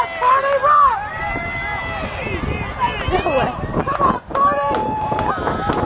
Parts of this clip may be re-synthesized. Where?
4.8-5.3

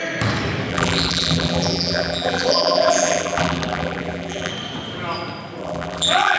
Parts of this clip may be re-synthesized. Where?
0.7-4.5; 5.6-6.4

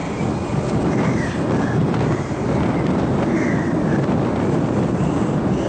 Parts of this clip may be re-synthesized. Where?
none

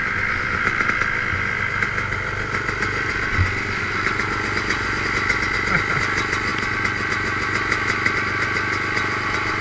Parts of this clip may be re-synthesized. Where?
none

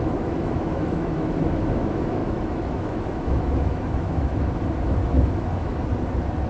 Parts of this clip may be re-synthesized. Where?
0.0-5.7

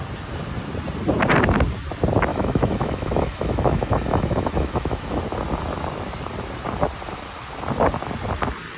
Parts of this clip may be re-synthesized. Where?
2.3-5.2

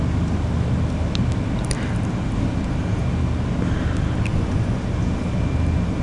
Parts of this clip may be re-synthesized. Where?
4.3-4.8

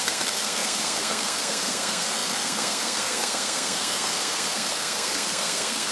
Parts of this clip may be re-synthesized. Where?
0.0-5.9